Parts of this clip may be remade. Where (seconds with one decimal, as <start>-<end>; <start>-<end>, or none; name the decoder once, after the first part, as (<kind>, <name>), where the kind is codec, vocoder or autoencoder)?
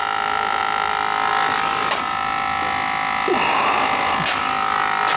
none